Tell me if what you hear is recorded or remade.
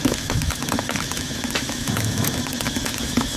remade